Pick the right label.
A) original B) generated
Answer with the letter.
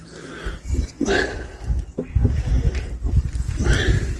A